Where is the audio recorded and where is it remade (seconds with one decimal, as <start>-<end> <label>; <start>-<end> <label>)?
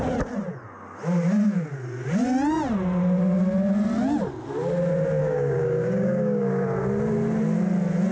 0.0-5.2 recorded; 5.2-6.5 remade; 6.5-8.1 recorded